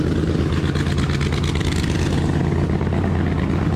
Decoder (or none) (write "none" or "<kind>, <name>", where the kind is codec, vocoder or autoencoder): none